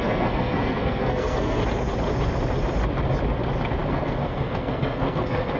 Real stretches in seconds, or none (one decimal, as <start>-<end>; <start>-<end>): 1.6-3.9